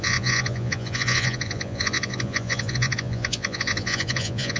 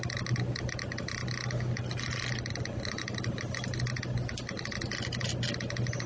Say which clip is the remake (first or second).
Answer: first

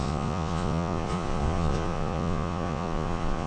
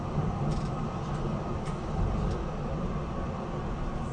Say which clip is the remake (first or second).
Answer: first